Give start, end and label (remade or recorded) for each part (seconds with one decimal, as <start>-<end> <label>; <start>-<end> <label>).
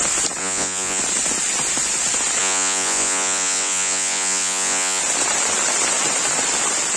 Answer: 0.0-0.4 recorded; 0.4-1.0 remade; 1.0-2.4 recorded; 2.4-5.0 remade; 5.0-7.0 recorded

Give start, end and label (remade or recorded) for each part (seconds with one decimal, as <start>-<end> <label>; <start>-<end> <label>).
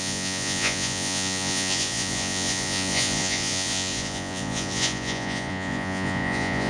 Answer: 0.0-6.7 remade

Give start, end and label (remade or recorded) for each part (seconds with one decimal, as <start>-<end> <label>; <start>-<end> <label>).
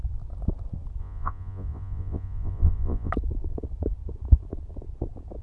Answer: 0.0-1.0 recorded; 1.0-3.1 remade; 3.1-5.4 recorded